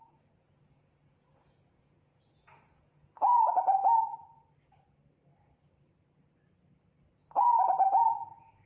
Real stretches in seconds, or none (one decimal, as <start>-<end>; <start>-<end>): 3.8-7.2